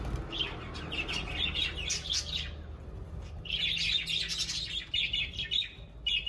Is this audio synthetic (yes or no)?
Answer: no